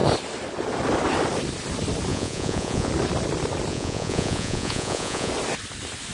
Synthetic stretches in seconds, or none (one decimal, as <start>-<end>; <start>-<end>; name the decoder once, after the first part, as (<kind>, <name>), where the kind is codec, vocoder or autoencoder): 2.1-2.9 (vocoder, Vocos); 3.7-5.3